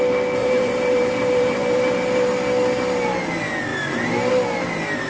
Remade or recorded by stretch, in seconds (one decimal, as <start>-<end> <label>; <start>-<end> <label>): 0.0-0.4 recorded; 0.4-2.3 remade; 2.3-5.1 recorded